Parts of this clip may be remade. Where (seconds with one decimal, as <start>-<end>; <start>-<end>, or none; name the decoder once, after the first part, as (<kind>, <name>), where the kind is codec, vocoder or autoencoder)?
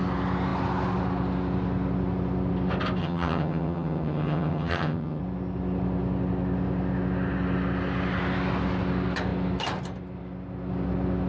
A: 3.0-5.2 (vocoder, HiFi-GAN)